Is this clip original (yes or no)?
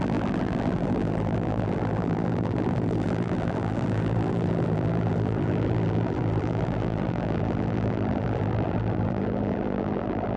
no